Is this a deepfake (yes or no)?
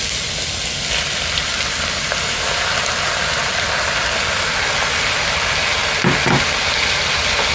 no